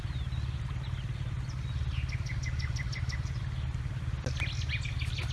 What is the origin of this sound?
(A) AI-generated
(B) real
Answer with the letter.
B